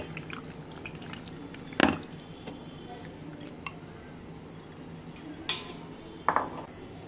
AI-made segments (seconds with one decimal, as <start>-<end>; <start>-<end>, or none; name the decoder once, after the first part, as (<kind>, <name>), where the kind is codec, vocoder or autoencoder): none